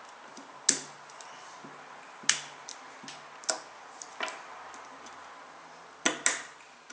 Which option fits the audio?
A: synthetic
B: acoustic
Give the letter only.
B